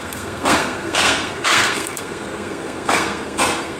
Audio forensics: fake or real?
fake